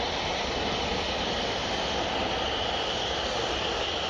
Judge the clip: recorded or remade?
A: recorded